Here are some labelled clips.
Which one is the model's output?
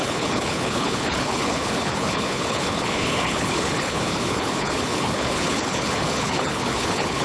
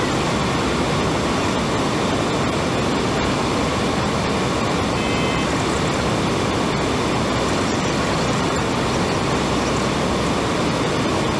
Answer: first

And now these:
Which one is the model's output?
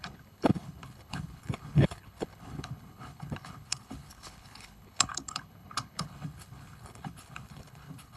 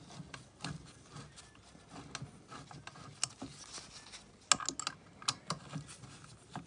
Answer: first